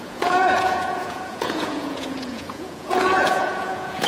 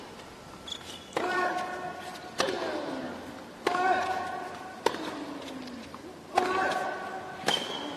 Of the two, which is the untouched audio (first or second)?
second